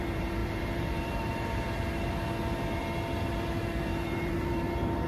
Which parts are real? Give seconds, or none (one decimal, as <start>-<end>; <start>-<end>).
none